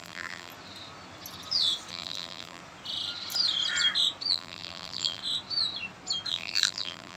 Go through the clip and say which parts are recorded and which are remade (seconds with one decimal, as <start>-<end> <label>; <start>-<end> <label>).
0.0-0.5 remade; 0.5-1.9 recorded; 1.9-2.6 remade; 2.6-4.3 recorded; 4.3-5.2 remade; 5.2-6.3 recorded; 6.3-7.2 remade